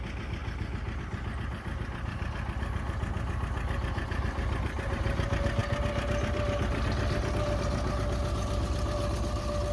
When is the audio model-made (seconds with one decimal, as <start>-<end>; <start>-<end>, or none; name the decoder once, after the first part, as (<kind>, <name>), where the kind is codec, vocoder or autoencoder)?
none